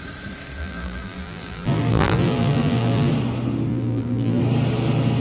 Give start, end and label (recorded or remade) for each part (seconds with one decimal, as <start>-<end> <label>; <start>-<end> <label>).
0.0-0.6 recorded; 0.6-3.1 remade; 3.1-3.7 recorded; 3.7-4.4 remade; 4.4-5.2 recorded